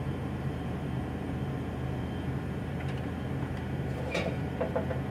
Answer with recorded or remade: remade